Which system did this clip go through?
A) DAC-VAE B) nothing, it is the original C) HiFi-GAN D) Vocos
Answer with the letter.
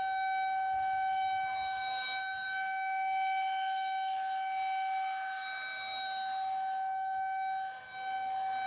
A